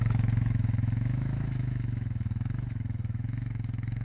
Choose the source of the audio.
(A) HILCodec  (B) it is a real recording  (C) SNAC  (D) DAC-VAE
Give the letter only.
D